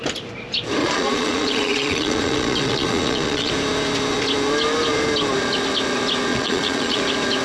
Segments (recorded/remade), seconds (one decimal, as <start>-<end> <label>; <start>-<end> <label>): 0.0-0.8 recorded; 0.8-3.5 remade; 3.5-6.3 recorded; 6.3-7.0 remade; 7.0-7.4 recorded